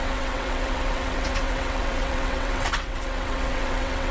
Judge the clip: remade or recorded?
remade